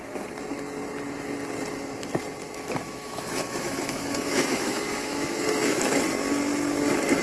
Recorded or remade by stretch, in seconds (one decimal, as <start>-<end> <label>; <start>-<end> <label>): 0.0-2.4 recorded; 2.4-6.0 remade; 6.0-7.2 recorded